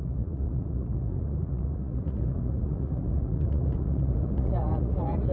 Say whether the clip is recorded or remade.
remade